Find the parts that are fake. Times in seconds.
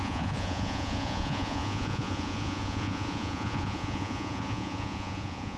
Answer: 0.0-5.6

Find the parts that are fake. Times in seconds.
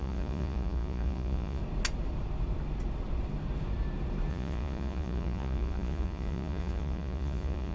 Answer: 0.0-1.6; 4.3-7.7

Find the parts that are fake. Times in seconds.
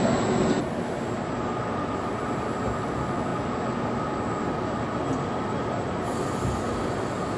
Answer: none